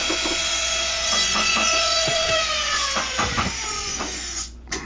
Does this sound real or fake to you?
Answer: fake